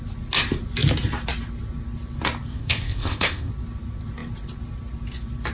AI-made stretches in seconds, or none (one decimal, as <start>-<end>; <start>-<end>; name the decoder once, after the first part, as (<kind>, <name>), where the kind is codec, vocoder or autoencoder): 2.5-3.5 (codec, ZipCodec)